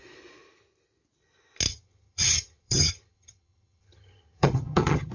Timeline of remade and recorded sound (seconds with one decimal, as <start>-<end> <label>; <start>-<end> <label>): 0.0-1.7 recorded; 1.7-5.1 remade